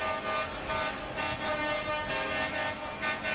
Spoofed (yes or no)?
no